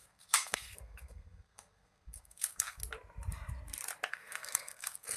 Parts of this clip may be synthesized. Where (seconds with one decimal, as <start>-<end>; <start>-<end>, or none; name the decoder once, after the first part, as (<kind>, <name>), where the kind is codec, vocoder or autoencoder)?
0.0-2.8 (codec, SNAC); 4.1-5.2

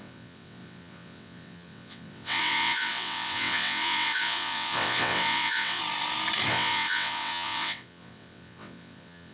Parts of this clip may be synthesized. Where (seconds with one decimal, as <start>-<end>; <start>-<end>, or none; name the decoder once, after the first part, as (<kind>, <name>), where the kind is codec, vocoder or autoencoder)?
0.0-5.8 (vocoder, WaveNeXt); 6.5-9.3